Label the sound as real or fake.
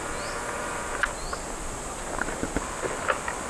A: real